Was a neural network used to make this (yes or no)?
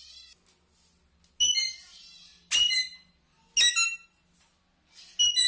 no